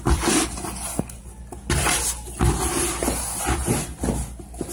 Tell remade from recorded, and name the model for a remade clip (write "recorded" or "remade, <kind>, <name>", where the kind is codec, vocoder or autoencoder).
recorded